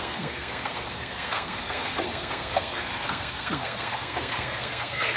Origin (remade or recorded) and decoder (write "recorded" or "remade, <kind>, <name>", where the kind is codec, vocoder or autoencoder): remade, codec, SNAC